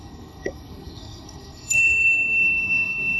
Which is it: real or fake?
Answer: fake